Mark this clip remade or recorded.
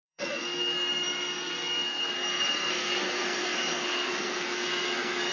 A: remade